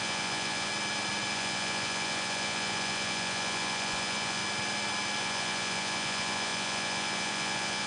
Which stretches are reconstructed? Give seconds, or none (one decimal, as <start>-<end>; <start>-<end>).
0.0-0.7; 1.3-4.4; 5.2-7.9